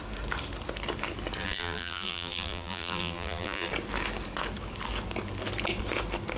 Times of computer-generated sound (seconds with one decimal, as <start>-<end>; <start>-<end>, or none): 1.4-3.7

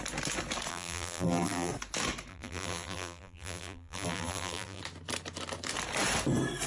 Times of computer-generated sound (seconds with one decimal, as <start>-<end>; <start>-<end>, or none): 0.7-1.7; 2.3-4.8

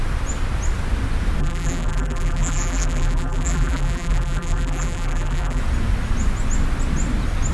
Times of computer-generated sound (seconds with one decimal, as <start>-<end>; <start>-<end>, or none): 1.4-5.6

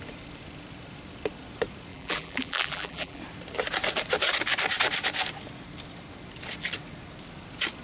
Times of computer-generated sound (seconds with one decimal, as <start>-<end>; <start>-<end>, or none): 1.9-3.2

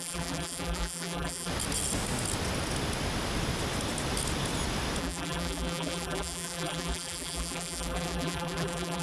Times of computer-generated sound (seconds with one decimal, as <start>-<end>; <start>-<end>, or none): 0.0-1.5; 5.0-9.0

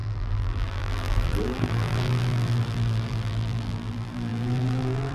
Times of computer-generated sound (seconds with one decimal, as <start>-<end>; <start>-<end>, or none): 0.0-5.1

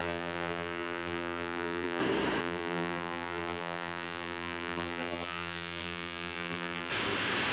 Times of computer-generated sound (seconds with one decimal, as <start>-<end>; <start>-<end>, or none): 0.0-2.0; 2.4-6.9

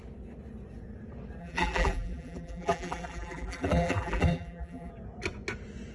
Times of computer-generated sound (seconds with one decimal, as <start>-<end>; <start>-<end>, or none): 1.4-4.9